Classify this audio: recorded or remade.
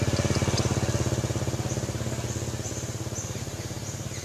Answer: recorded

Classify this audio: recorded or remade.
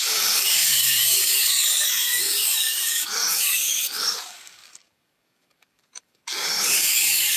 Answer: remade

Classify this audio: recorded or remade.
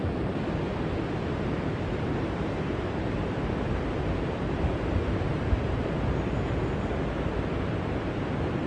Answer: recorded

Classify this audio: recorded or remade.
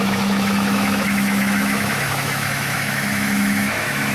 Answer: remade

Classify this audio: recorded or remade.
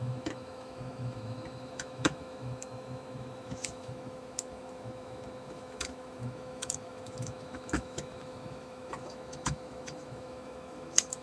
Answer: remade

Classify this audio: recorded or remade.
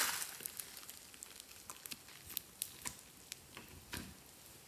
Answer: recorded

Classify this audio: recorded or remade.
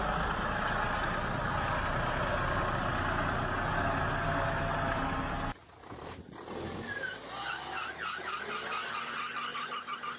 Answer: recorded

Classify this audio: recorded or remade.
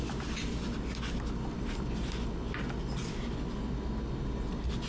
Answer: recorded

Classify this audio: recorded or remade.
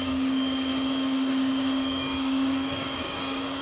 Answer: remade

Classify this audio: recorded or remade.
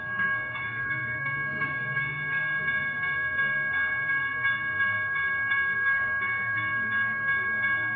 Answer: remade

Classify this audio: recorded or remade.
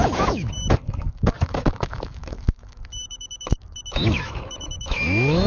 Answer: remade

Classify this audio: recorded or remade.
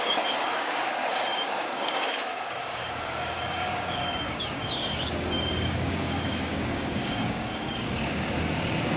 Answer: remade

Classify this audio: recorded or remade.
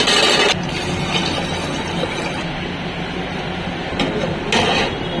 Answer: recorded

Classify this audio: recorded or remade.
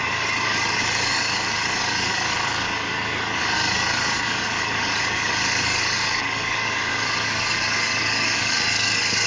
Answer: remade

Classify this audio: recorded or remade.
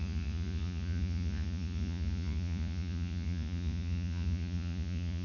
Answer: remade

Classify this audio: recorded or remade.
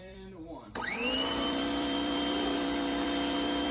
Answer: remade